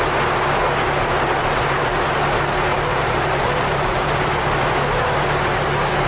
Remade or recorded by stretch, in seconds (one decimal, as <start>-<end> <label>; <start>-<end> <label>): 0.0-1.4 recorded; 1.4-2.1 remade; 2.1-2.7 recorded; 2.7-4.2 remade; 4.2-6.1 recorded